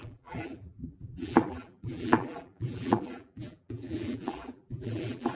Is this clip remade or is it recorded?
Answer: remade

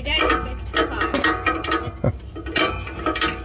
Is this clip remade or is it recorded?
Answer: recorded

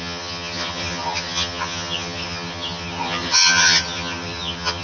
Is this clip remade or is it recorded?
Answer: remade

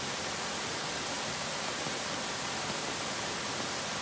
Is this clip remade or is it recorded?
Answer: recorded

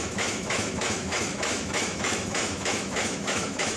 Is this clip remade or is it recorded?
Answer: remade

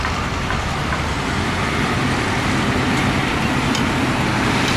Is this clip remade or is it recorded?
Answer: recorded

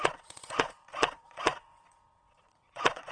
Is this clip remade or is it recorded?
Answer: remade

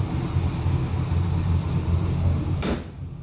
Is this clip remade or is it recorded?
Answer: recorded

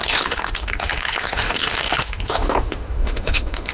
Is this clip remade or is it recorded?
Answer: remade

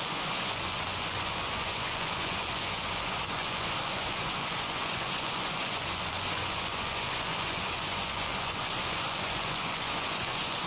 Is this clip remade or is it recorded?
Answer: remade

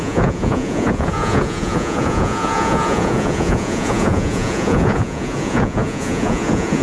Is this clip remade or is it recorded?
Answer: remade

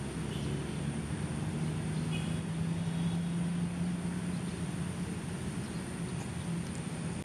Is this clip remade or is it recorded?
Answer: recorded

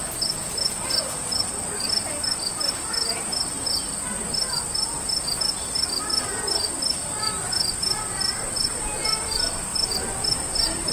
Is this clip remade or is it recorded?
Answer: recorded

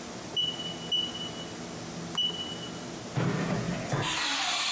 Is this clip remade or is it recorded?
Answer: recorded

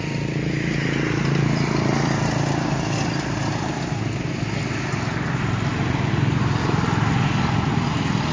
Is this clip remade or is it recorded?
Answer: recorded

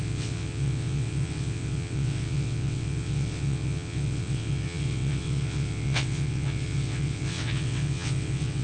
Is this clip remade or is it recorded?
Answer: remade